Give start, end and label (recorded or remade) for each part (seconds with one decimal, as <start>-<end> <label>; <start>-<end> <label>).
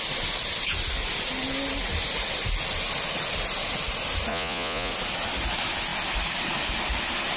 0.0-4.3 recorded; 4.3-4.9 remade; 4.9-7.4 recorded